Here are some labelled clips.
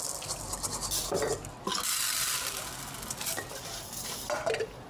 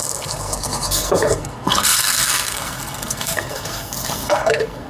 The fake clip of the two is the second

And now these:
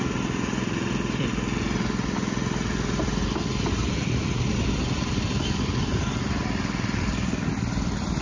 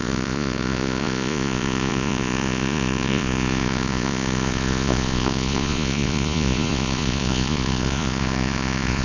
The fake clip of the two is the second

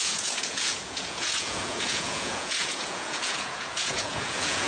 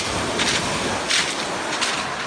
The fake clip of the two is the first